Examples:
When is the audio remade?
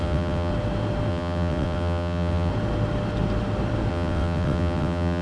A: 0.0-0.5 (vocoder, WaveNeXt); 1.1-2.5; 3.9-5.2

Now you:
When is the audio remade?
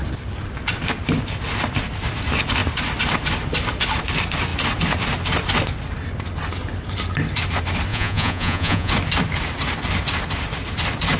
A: 7.9-8.9 (vocoder, Vocos)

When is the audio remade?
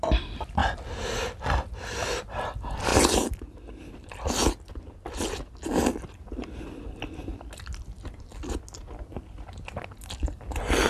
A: 0.0-0.6 (vocoder, BigVGAN v2); 1.6-4.4; 9.0-10.9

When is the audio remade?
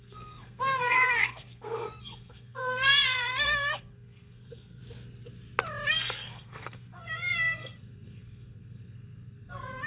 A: 0.0-4.8 (codec, SNAC); 5.9-9.9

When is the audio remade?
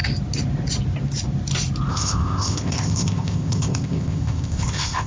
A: 1.9-5.1 (codec, ZipCodec)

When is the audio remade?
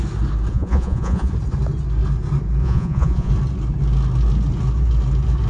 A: 0.5-1.3 (vocoder, Vocos); 2.6-3.3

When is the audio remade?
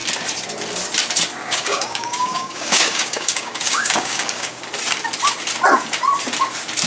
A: 1.4-4.6 (codec, DAC)